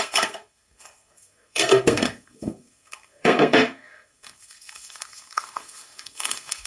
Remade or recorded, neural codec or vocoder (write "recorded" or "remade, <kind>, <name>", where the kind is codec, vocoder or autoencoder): remade, codec, SNAC